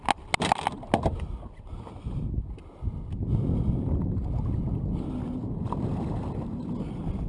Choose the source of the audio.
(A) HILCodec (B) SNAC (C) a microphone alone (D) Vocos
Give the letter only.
C